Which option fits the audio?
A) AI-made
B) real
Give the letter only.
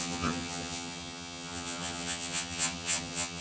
A